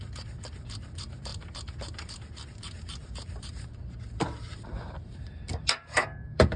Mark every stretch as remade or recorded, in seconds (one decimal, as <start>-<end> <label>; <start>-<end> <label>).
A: 0.0-6.6 remade